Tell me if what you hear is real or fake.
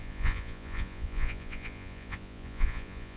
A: fake